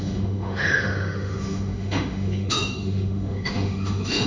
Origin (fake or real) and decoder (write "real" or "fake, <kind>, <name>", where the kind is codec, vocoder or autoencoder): fake, autoencoder, DAC-VAE